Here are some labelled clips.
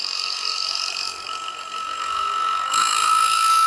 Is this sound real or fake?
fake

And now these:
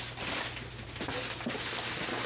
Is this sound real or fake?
real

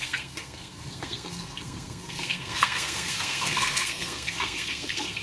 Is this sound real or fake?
fake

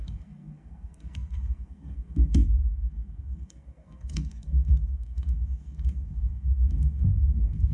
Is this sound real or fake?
fake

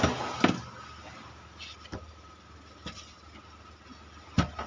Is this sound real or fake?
real